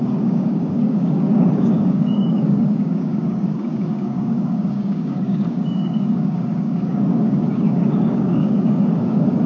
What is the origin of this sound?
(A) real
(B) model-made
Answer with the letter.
B